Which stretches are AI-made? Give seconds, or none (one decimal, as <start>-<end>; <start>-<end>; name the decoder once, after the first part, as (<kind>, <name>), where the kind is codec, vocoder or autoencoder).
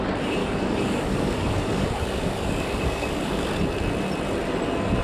0.4-3.4 (codec, DAC)